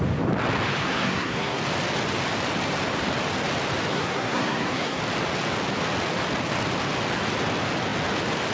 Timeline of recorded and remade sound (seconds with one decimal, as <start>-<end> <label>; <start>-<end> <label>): 0.0-0.8 recorded; 0.8-1.6 remade; 1.6-3.9 recorded; 3.9-5.0 remade; 5.0-8.5 recorded